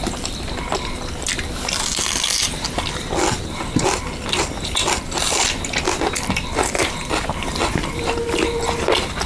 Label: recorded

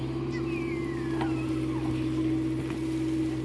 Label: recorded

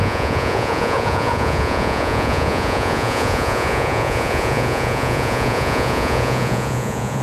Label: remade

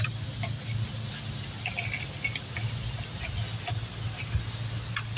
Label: recorded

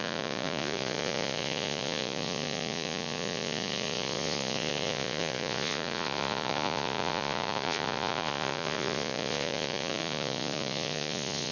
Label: remade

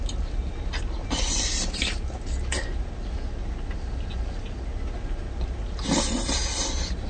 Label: recorded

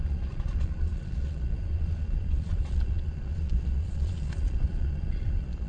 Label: remade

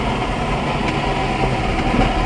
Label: recorded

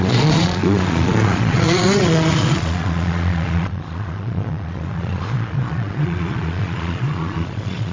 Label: remade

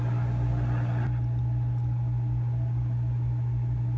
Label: recorded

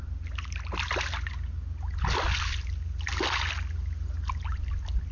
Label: recorded